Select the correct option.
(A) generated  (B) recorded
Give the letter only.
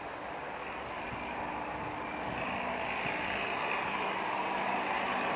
B